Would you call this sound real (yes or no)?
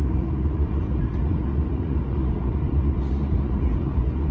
no